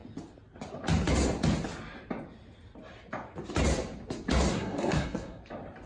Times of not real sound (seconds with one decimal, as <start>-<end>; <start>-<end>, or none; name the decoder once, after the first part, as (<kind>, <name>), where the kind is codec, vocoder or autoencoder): 4.5-5.4 (codec, SNAC)